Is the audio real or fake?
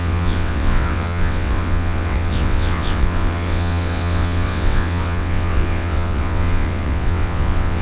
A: fake